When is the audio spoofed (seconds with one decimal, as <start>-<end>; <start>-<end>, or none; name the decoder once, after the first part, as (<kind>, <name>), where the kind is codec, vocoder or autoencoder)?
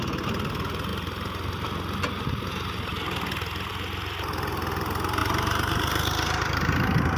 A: 5.2-6.6 (vocoder, BigVGAN v2)